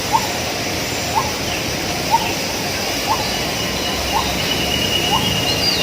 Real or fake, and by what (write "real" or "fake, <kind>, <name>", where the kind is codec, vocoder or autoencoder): real